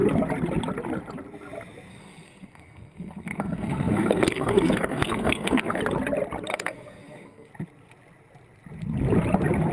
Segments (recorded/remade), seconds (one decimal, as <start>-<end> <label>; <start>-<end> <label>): 0.0-1.9 recorded; 1.9-5.8 remade; 5.8-6.5 recorded; 6.5-7.5 remade; 7.5-9.7 recorded